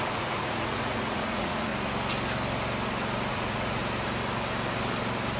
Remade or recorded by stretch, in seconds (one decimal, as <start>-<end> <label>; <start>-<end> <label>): 0.0-1.7 remade; 1.7-3.3 recorded; 3.3-3.8 remade; 3.8-5.4 recorded